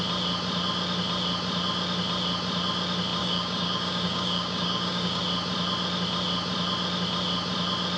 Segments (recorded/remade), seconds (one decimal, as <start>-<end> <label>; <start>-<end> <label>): 0.0-3.2 recorded; 3.2-5.2 remade; 5.2-8.0 recorded